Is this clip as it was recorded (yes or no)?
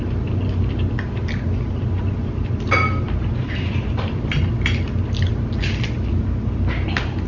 yes